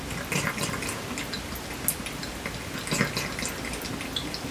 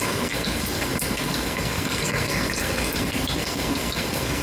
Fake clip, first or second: second